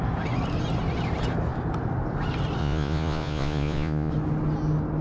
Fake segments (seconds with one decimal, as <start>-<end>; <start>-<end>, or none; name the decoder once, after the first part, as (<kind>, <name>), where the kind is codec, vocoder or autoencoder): 2.6-4.1 (vocoder, Vocos)